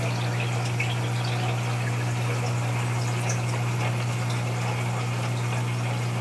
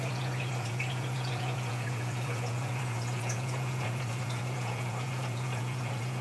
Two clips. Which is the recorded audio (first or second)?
first